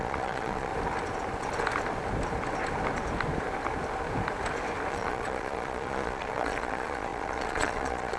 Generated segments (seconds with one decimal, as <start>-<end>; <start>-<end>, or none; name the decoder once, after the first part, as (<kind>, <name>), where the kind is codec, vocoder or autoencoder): 0.0-0.7 (vocoder, Vocos); 4.9-8.2